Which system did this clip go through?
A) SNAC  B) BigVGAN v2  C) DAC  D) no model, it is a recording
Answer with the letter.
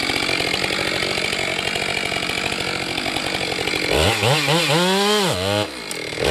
D